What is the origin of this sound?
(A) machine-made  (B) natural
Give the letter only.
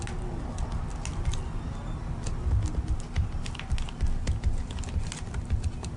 B